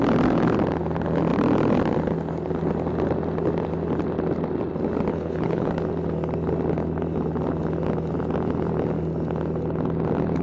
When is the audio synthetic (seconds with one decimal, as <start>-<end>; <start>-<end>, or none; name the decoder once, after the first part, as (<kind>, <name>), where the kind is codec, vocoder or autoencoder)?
5.1-5.7 (codec, HILCodec)